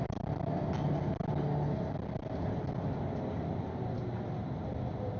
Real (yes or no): yes